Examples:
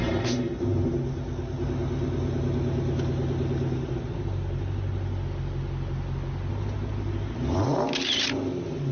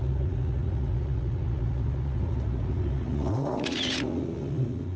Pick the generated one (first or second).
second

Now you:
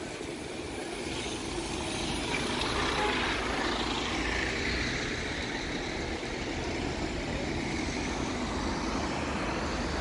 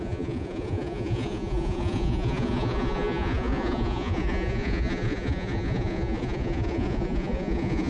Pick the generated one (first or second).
second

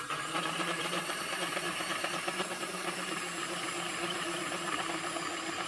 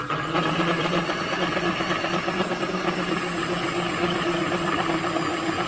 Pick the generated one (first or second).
first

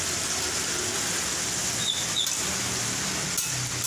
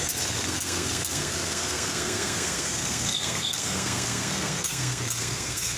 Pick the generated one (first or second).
second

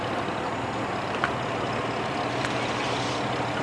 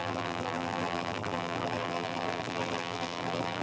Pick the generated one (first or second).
second